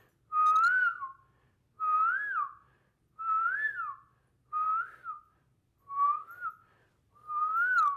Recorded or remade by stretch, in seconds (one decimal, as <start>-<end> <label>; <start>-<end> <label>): 0.0-8.0 recorded